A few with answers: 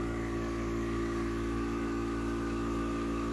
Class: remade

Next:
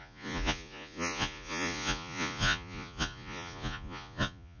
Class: remade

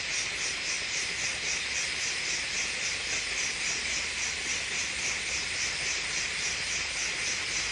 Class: recorded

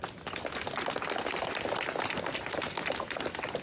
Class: recorded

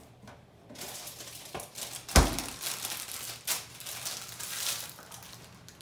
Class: recorded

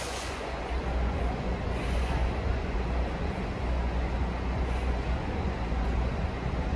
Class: remade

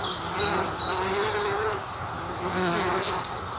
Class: recorded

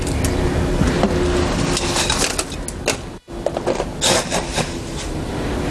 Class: recorded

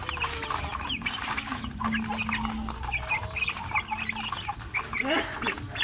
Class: recorded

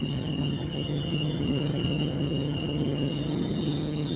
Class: remade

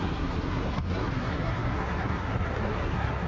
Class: remade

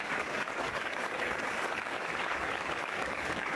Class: remade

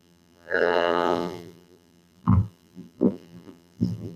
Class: remade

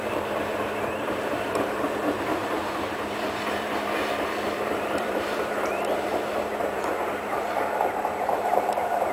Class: remade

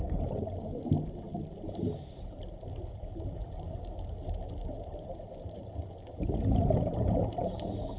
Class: recorded